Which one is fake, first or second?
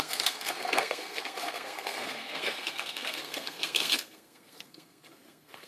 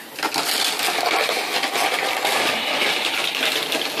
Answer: first